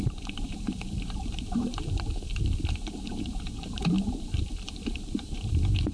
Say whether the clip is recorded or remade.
remade